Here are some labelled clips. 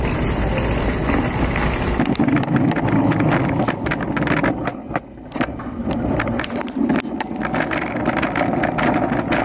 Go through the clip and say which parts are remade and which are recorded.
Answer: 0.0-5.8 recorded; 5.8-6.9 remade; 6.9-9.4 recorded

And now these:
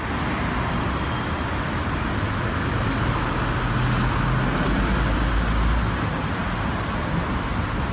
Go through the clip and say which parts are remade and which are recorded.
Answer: 0.0-7.9 recorded

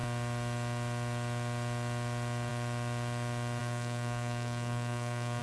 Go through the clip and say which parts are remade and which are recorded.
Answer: 0.0-3.6 recorded; 3.6-5.4 remade

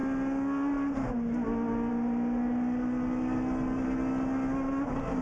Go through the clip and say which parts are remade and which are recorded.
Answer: 0.0-5.2 recorded

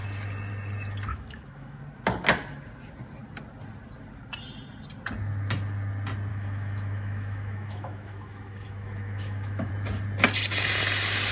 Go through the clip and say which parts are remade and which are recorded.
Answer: 0.0-1.1 recorded; 1.1-1.8 remade; 1.8-6.3 recorded; 6.3-9.7 remade; 9.7-11.3 recorded